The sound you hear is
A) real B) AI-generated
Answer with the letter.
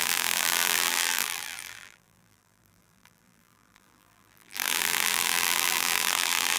B